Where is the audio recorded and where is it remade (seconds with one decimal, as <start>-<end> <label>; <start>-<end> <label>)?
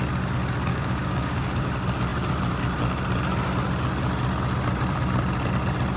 0.0-0.7 recorded; 0.7-1.7 remade; 1.7-6.0 recorded